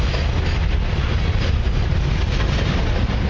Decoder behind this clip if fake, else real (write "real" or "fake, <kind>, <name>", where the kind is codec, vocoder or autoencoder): real